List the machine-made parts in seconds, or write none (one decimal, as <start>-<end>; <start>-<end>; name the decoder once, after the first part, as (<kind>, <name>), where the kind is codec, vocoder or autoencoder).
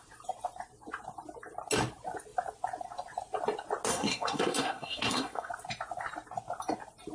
3.9-5.5 (codec, SNAC)